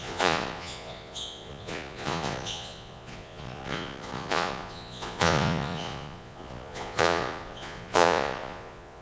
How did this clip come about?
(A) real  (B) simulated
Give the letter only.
B